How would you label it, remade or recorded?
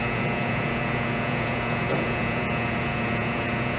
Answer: remade